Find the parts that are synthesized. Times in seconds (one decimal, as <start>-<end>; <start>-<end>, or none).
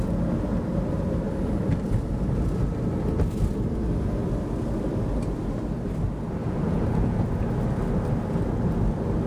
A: 6.4-7.3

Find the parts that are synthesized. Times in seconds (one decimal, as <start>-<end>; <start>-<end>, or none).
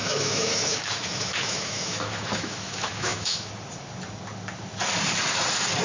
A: 0.0-3.5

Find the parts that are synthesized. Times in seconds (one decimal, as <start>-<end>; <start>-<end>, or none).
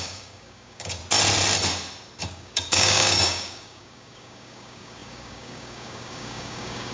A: 0.0-1.0; 2.2-6.9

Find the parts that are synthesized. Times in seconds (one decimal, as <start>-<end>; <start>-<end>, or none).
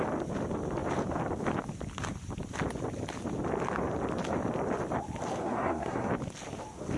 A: 5.4-6.1